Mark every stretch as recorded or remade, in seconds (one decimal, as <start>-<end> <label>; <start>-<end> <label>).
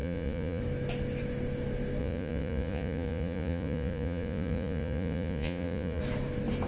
0.0-0.6 remade; 0.6-2.0 recorded; 2.0-6.0 remade; 6.0-6.7 recorded